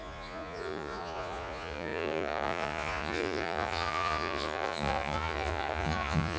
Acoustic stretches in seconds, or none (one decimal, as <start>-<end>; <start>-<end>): none